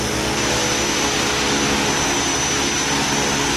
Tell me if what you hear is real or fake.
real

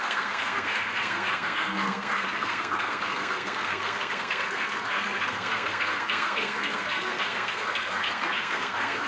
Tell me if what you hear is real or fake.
fake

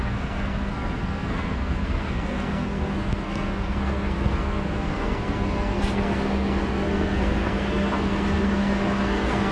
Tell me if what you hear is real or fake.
fake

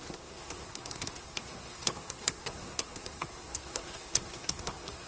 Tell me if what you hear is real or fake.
fake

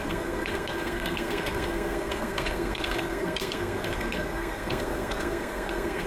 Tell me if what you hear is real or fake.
fake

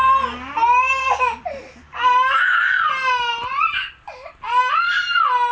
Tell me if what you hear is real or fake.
real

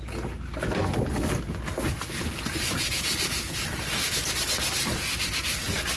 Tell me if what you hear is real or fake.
real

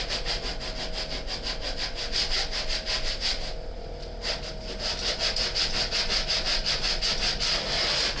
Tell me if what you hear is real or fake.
real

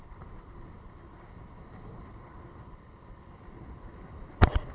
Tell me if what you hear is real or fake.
real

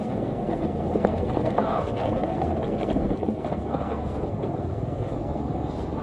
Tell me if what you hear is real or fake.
fake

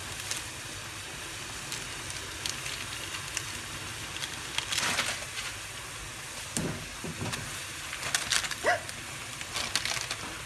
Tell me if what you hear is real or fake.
real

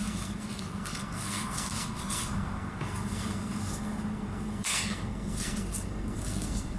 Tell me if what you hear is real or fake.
fake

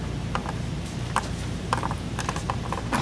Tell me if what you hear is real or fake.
real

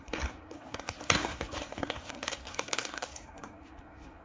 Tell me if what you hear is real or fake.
fake